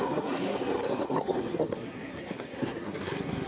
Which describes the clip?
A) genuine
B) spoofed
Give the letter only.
B